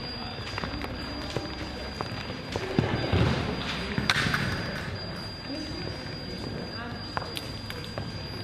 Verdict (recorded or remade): remade